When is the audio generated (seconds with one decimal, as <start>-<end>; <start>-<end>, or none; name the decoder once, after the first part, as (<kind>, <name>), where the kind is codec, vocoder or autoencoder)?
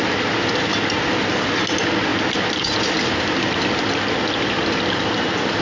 none